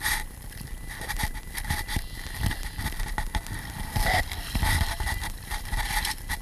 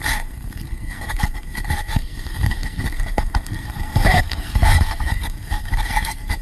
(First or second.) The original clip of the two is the first